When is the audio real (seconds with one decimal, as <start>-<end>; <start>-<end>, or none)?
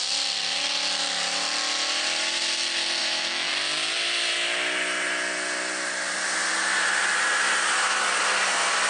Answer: 0.0-3.0; 3.5-8.9